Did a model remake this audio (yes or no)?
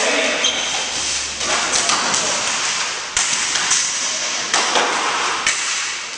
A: no